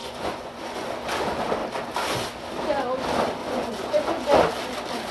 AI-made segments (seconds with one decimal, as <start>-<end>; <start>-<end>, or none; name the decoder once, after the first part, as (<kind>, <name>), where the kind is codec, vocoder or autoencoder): 0.0-0.9 (vocoder, Vocos); 3.4-4.3